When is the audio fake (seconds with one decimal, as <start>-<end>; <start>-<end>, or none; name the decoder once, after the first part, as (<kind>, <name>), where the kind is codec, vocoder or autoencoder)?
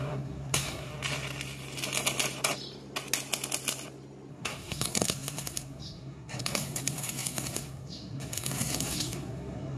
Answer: 0.0-0.9 (codec, SNAC); 4.3-9.8